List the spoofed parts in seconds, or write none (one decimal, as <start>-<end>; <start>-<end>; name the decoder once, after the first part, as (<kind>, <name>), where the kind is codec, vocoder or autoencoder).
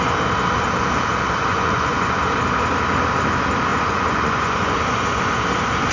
1.4-2.2 (vocoder, Vocos); 3.7-5.2